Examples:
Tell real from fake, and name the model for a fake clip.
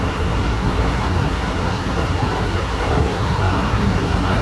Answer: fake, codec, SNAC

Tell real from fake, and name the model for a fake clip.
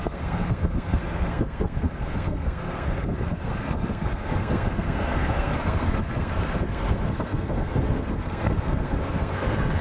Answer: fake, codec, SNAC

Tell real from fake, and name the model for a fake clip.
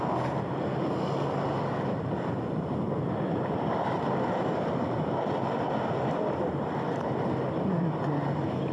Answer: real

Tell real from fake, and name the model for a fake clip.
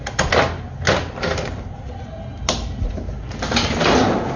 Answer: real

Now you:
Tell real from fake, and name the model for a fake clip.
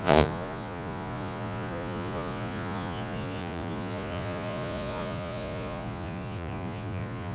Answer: fake, vocoder, Vocos